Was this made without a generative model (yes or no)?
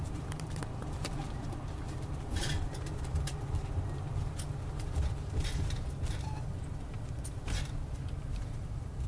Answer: no